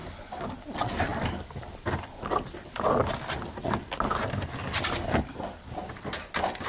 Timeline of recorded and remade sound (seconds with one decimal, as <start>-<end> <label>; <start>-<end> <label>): 0.0-6.7 recorded